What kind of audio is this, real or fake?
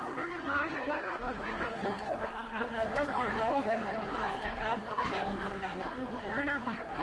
fake